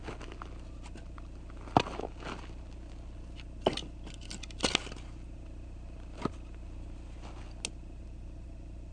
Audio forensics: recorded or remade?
recorded